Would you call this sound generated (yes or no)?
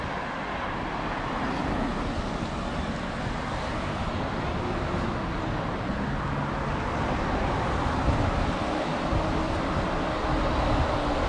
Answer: no